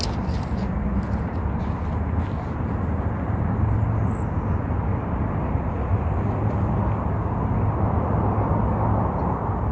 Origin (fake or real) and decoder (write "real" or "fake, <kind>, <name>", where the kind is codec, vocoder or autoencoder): real